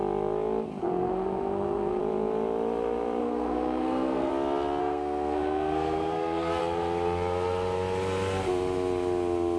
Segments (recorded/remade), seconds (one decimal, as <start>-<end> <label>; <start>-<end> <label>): 0.0-0.8 recorded; 0.8-2.0 remade; 2.0-3.2 recorded; 3.2-4.3 remade; 4.3-4.8 recorded; 4.8-6.6 remade; 6.6-9.6 recorded